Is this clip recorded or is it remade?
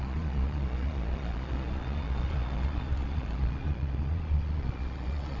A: remade